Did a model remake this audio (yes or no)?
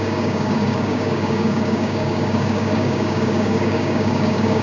yes